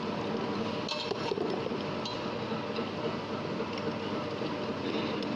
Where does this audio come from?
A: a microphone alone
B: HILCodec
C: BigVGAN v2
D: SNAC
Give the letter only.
A